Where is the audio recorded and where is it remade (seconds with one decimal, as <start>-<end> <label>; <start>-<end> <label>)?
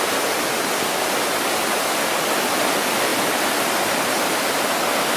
0.0-5.2 recorded